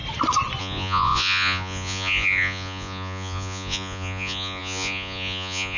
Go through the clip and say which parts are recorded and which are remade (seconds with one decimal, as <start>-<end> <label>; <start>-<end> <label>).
0.0-0.6 recorded; 0.6-5.8 remade